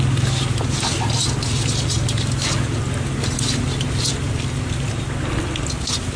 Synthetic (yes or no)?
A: no